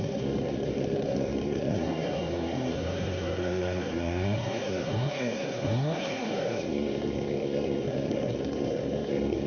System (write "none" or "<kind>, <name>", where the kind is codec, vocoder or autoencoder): codec, SNAC